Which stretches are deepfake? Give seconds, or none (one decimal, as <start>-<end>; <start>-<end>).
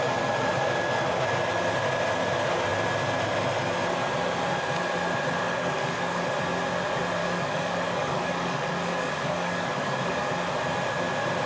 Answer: 5.4-6.3; 7.2-10.3